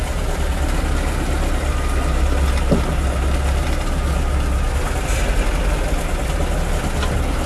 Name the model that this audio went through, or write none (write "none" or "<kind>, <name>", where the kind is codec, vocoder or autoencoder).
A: none